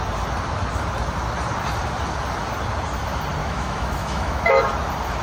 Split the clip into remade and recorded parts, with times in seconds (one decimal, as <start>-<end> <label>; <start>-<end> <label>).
0.0-3.4 recorded; 3.4-4.6 remade; 4.6-5.2 recorded